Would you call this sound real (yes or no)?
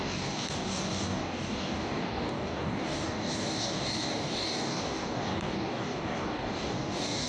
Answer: no